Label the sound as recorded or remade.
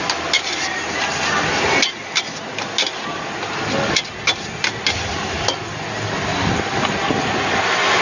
recorded